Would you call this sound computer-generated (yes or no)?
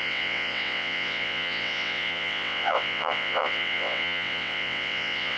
yes